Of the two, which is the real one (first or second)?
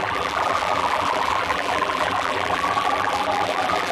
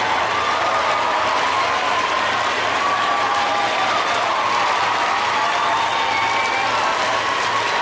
second